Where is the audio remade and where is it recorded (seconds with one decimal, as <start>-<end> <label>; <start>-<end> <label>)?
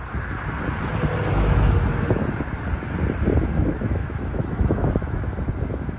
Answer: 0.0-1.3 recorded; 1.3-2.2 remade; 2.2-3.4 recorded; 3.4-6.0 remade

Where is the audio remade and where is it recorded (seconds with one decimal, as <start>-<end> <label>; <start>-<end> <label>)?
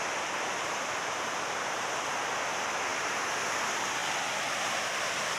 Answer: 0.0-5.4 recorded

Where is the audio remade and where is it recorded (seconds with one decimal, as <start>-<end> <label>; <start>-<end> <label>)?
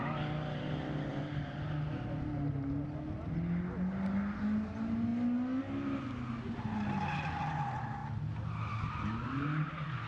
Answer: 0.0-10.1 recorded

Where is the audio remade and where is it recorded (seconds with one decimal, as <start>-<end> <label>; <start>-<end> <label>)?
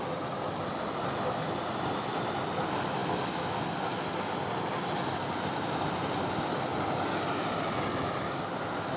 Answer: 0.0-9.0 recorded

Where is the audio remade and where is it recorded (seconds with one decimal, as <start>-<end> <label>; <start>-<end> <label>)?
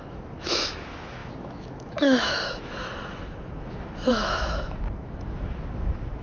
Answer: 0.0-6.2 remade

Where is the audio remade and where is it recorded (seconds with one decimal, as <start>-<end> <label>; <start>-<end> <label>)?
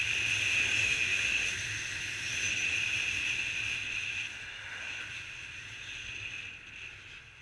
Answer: 0.0-0.8 recorded; 0.8-1.5 remade; 1.5-4.3 recorded; 4.3-5.0 remade; 5.0-7.4 recorded